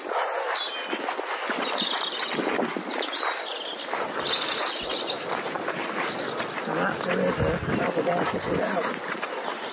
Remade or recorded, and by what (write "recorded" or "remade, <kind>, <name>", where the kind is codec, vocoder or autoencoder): recorded